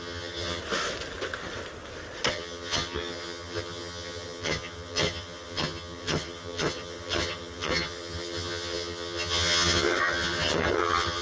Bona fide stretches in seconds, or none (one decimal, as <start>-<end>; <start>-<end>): 0.6-2.3